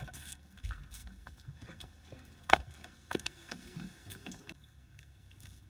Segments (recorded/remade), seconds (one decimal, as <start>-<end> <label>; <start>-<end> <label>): 0.0-5.7 remade